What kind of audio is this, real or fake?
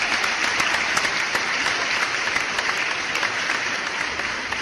real